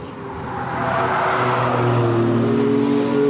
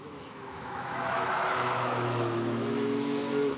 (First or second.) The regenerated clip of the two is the second